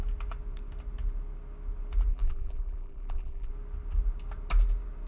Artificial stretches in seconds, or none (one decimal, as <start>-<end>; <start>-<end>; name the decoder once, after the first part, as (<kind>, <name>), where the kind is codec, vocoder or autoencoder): 2.1-3.5 (vocoder, BigVGAN v2)

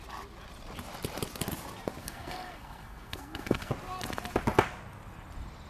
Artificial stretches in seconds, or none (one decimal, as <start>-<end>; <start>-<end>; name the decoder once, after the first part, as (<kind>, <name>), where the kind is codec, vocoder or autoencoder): 2.0-3.7 (codec, SNAC)

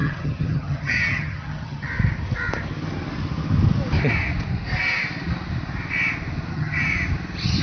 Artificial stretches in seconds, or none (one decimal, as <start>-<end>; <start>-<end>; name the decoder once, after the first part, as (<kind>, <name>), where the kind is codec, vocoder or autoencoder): 0.0-1.9 (vocoder, HiFi-GAN); 6.5-6.9

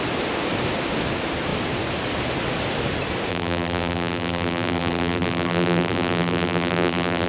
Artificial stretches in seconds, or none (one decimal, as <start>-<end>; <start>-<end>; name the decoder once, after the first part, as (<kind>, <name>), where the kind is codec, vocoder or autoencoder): 3.3-7.3 (vocoder, BigVGAN v2)